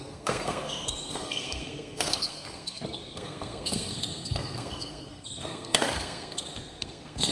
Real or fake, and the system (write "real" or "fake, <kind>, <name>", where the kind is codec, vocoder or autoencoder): fake, codec, SNAC